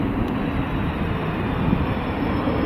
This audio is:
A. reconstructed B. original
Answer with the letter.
B